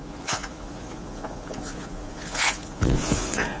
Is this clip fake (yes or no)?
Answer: yes